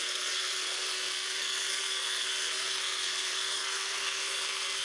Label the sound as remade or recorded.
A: remade